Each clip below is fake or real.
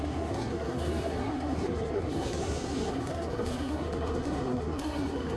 fake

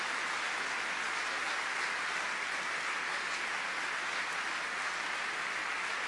real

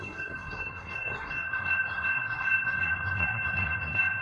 fake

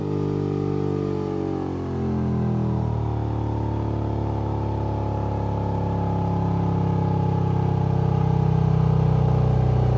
real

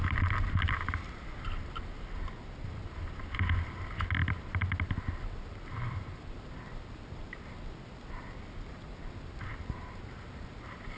real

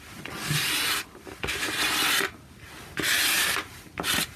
real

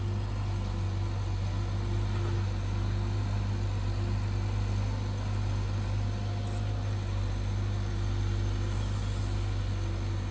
real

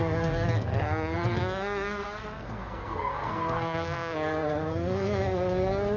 fake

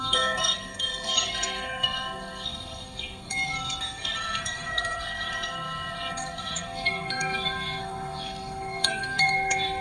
fake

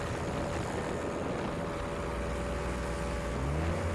real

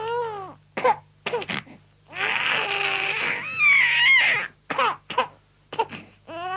real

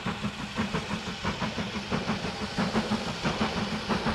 real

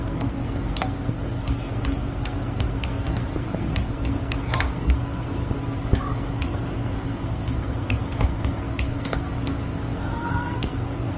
fake